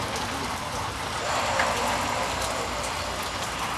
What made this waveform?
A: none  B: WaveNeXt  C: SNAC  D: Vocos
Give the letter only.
A